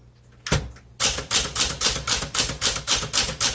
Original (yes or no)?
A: yes